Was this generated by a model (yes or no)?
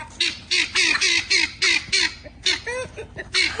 no